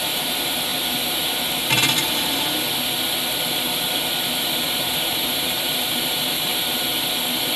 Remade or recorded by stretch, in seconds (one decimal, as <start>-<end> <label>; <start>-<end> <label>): 0.0-0.7 remade; 0.7-4.2 recorded; 4.2-6.5 remade; 6.5-7.6 recorded